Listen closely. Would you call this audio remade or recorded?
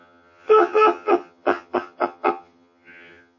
remade